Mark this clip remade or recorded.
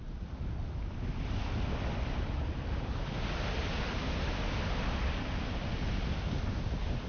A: recorded